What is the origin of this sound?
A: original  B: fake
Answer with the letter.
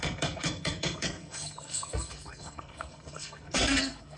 B